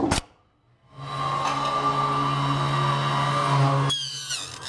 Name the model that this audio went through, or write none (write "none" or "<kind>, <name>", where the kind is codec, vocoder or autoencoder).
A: none